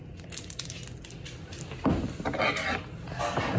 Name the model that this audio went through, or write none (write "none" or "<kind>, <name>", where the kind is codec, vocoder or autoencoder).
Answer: none